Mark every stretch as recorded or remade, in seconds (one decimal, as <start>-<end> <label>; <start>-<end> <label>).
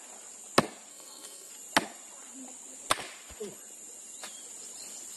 0.0-0.9 recorded; 0.9-1.5 remade; 1.5-5.2 recorded